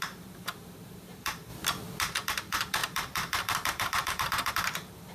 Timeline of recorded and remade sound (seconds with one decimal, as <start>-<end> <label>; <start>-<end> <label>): 0.0-1.5 remade; 1.5-2.0 recorded; 2.0-5.1 remade